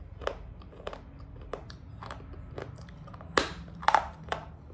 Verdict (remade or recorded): recorded